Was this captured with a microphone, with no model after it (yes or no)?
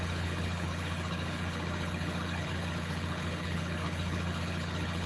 no